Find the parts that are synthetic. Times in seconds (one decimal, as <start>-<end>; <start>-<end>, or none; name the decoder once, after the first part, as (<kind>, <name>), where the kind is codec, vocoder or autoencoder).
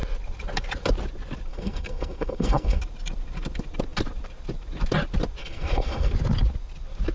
1.5-2.8 (codec, SNAC); 5.4-6.1